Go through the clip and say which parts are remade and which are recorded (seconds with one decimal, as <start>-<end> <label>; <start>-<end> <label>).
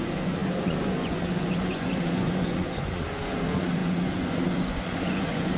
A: 0.0-5.6 remade